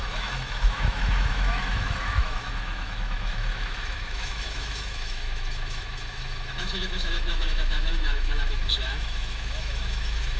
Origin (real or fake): fake